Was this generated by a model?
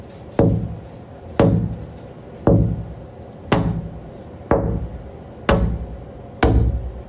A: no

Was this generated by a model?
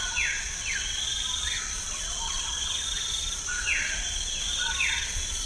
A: yes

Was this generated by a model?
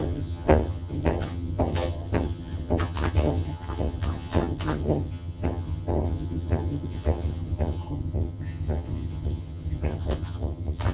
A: yes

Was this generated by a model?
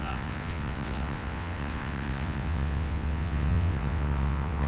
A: yes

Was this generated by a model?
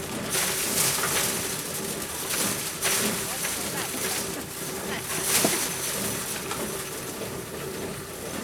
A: yes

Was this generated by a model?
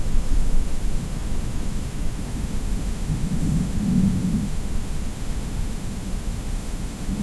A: yes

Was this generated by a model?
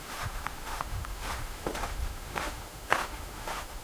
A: yes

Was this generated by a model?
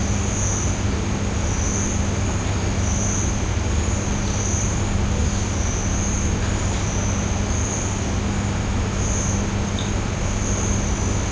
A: no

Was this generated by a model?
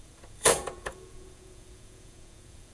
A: yes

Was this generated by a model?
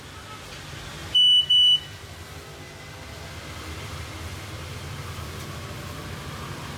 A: no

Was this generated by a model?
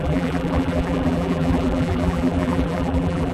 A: yes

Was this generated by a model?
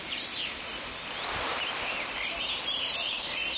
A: yes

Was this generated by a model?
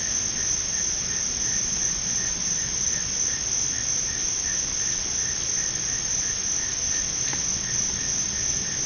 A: no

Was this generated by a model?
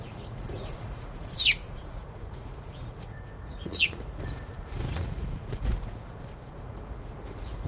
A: yes